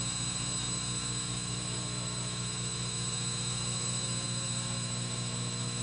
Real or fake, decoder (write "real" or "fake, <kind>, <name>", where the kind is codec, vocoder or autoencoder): fake, autoencoder, DAC-VAE